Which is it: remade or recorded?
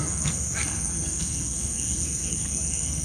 remade